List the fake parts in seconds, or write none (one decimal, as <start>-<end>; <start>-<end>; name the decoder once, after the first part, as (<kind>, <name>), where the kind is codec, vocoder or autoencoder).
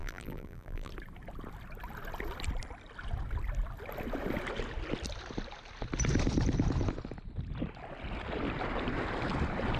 0.0-0.9 (vocoder, BigVGAN v2)